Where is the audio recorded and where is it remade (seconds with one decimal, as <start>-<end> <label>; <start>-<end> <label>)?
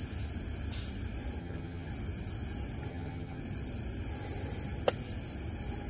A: 0.0-1.4 recorded; 1.4-1.9 remade; 1.9-2.9 recorded; 2.9-3.4 remade; 3.4-5.9 recorded